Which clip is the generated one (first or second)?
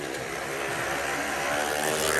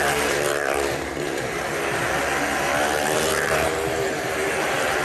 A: second